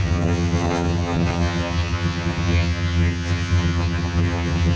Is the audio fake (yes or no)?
yes